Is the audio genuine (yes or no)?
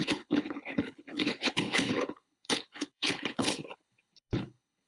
no